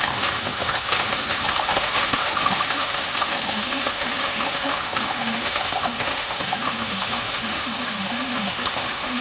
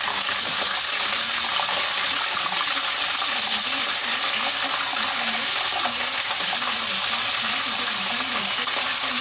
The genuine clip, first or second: second